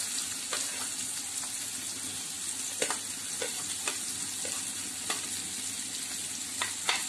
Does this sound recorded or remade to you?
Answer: recorded